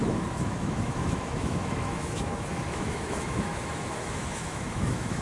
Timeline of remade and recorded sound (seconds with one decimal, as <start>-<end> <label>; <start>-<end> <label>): 0.0-5.2 remade